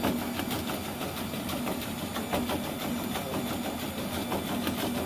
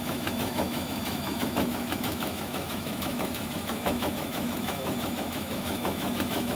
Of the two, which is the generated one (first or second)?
second